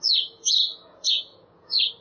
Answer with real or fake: fake